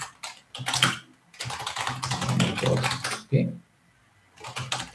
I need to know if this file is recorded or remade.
recorded